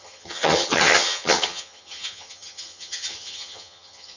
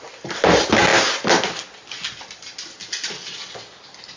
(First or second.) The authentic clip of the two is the second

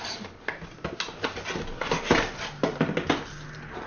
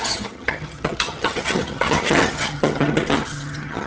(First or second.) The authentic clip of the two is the first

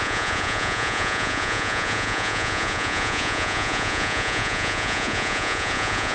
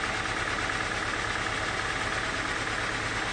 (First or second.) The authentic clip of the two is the second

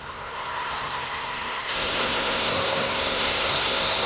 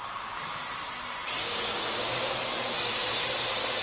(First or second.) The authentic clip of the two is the second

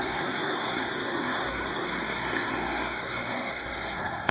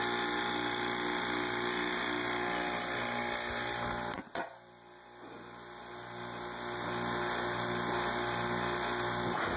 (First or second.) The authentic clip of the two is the second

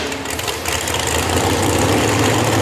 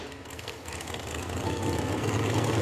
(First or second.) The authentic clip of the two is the first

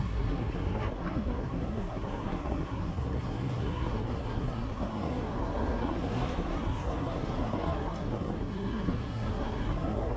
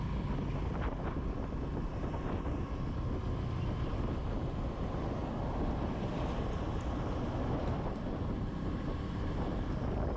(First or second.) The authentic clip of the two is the second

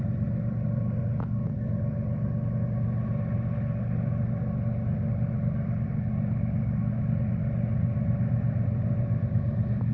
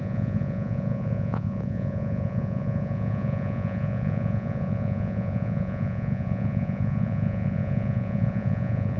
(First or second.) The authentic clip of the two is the first